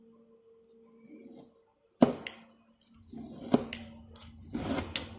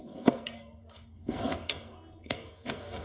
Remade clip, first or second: second